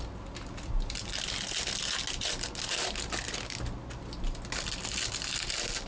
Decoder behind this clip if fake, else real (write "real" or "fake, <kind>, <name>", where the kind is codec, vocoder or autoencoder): real